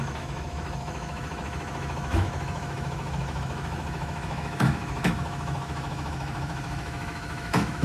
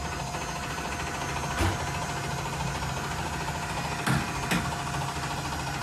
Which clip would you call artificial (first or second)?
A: first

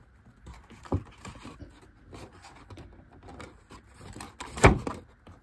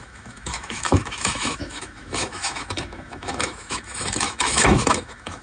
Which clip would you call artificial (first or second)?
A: second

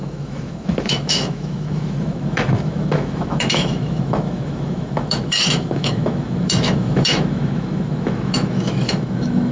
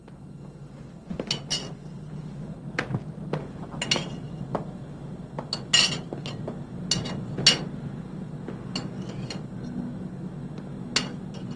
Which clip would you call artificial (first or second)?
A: first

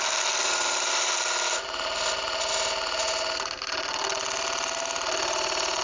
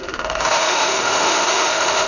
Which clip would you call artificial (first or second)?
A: second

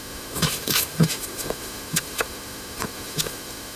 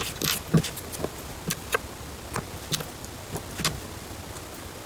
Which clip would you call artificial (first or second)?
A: first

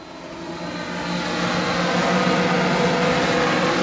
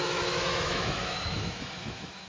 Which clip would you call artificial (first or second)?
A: second